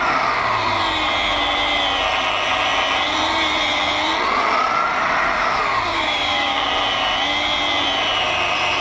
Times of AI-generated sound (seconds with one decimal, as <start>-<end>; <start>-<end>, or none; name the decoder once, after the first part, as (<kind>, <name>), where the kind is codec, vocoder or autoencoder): 5.9-6.7 (codec, DAC)